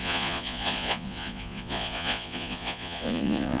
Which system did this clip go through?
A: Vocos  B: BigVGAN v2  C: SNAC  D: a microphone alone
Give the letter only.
A